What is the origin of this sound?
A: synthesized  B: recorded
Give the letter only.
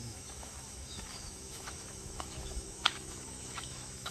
A